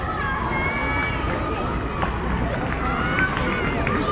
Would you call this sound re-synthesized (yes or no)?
no